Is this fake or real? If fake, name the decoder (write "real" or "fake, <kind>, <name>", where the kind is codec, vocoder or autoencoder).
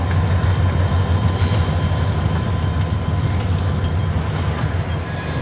real